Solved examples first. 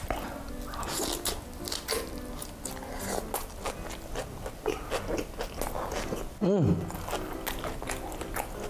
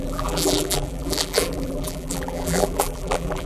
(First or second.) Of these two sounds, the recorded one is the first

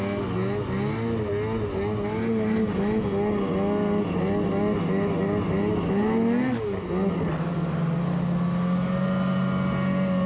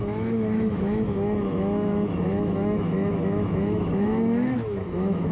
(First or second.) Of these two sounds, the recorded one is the first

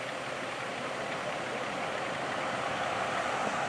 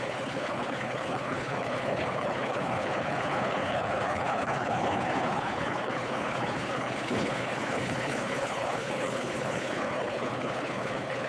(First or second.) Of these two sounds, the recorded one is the first